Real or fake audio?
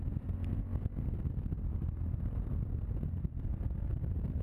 real